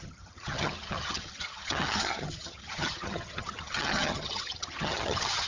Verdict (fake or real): fake